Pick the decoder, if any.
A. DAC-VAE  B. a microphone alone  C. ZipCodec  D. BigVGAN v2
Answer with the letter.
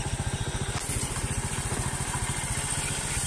B